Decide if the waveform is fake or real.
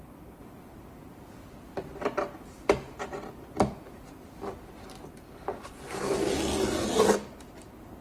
real